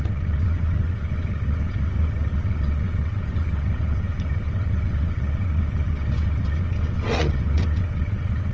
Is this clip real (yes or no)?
no